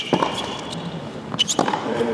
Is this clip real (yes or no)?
yes